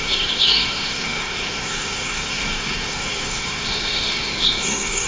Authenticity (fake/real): fake